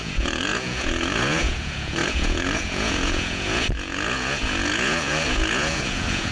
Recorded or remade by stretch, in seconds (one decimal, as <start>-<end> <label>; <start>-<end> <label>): 0.0-6.3 remade